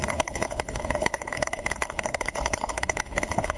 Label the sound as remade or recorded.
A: remade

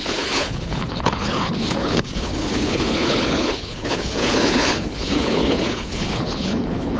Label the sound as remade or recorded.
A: remade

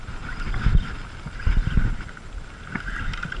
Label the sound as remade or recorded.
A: recorded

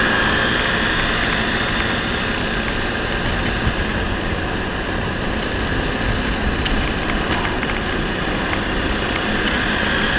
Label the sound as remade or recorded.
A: recorded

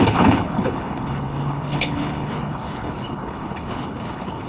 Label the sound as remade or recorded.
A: remade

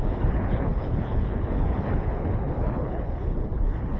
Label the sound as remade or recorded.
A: remade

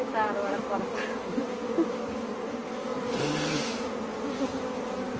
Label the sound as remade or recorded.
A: recorded